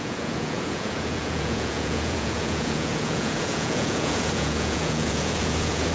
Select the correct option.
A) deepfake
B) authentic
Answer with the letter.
A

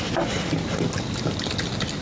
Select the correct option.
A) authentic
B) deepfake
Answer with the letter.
A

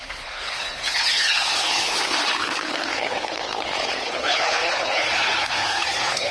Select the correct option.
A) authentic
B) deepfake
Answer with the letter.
B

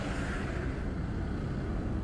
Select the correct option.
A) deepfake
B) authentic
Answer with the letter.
B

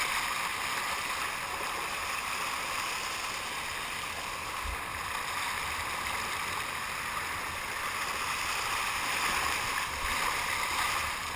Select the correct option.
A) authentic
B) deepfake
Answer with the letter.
A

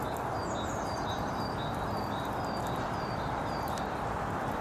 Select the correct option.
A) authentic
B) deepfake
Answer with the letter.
A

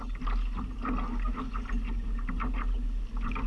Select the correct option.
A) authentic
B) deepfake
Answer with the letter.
A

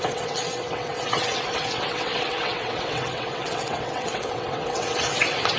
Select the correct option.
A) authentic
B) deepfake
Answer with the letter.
B